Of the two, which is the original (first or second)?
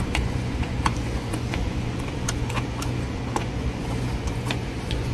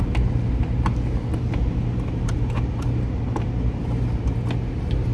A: second